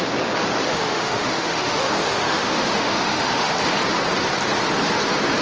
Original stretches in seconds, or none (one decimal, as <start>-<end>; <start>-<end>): 0.0-0.7; 3.5-5.4